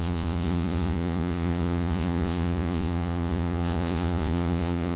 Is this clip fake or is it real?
fake